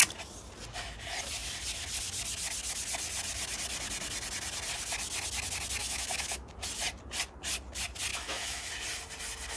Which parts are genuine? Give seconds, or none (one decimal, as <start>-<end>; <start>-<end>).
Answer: 0.0-5.8; 6.5-8.1; 8.7-9.6

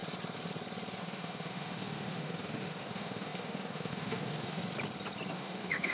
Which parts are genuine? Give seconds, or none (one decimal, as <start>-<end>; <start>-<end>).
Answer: 0.0-1.0; 4.6-5.3

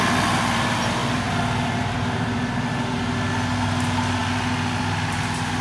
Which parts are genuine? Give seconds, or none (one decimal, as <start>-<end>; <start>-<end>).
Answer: 0.0-5.6

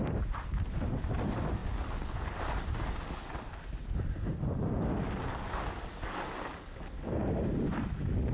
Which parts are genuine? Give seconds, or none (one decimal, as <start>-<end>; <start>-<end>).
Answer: 0.0-8.3

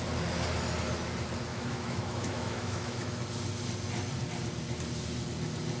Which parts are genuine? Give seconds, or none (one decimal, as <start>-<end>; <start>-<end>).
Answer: 0.0-1.5; 3.2-5.8

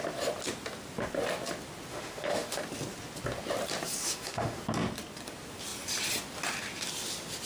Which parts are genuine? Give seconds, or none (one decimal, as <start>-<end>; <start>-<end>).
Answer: 0.0-1.9; 2.6-4.0; 4.6-7.5

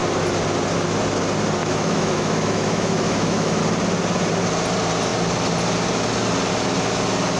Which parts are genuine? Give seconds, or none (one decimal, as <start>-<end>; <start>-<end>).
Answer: 0.0-1.6; 3.6-7.4

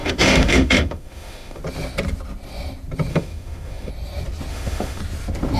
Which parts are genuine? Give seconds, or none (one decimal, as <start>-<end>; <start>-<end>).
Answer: 1.6-3.1; 3.9-4.5; 5.0-5.6